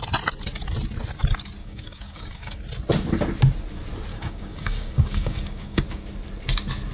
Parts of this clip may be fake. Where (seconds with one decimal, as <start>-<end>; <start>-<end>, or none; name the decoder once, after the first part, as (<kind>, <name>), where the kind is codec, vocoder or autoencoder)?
1.6-2.6 (codec, DAC); 4.1-5.8